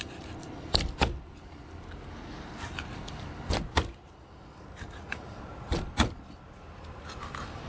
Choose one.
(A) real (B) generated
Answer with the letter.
A